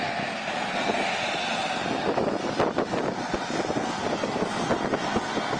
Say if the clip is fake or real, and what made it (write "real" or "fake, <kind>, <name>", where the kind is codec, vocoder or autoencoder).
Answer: real